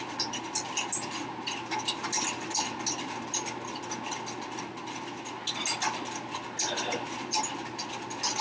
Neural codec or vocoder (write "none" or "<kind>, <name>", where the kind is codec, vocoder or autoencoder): none